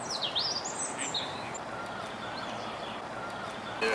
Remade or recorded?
recorded